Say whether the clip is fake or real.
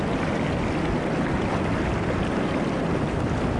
real